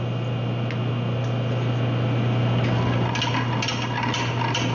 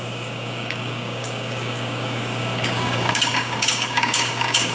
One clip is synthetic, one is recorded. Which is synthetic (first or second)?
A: second